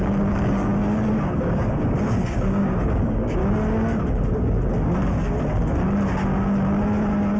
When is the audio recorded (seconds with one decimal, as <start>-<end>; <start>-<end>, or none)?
3.4-7.4